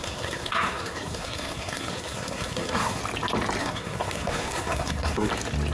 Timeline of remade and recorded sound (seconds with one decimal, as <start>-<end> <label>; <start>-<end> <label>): 0.0-3.0 remade; 3.0-3.6 recorded; 3.6-5.3 remade; 5.3-5.7 recorded